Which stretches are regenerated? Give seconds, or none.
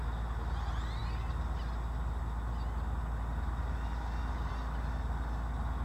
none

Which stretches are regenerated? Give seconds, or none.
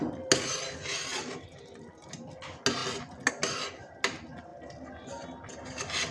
none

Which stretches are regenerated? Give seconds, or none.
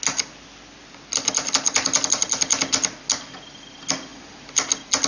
none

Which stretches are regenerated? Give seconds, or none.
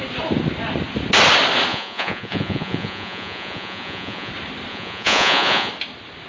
1.7-4.3; 4.7-5.7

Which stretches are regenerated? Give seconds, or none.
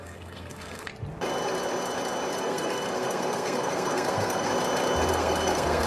0.0-0.9; 2.4-4.5; 5.1-5.9